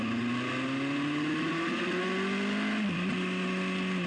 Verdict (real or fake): real